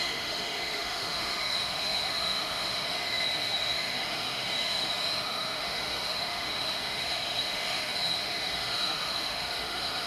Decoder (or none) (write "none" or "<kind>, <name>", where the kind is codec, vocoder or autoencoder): autoencoder, DAC-VAE